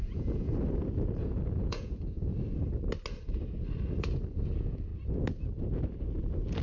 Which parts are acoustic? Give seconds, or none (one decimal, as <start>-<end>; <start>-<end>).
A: 0.5-1.2; 2.3-4.0; 4.9-6.6